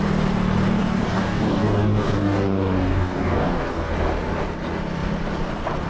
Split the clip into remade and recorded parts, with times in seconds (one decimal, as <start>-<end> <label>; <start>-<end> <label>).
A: 0.0-0.8 recorded; 0.8-3.9 remade; 3.9-5.9 recorded